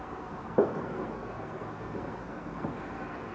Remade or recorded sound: remade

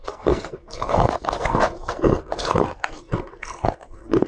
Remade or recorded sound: remade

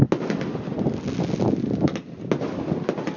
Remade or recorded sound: recorded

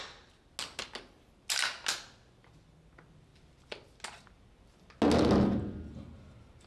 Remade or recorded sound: recorded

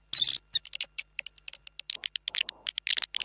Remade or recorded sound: recorded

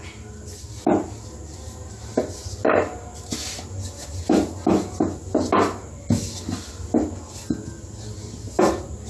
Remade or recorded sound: recorded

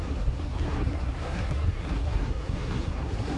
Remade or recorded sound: remade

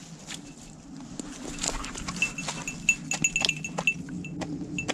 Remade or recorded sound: recorded